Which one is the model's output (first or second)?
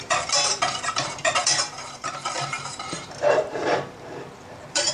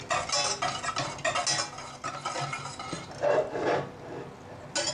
first